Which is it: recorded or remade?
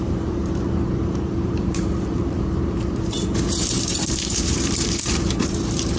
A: remade